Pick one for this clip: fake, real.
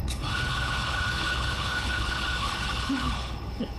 fake